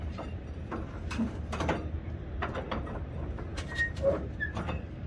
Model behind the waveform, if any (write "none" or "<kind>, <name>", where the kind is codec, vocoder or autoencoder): vocoder, BigVGAN v2